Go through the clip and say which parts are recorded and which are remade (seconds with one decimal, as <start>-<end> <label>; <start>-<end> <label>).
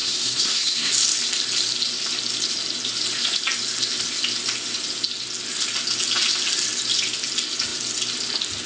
0.0-0.9 remade; 0.9-8.7 recorded